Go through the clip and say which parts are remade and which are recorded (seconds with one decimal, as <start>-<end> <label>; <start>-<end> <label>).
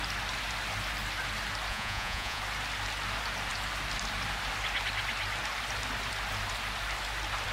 0.0-1.7 recorded; 1.7-2.4 remade; 2.4-7.5 recorded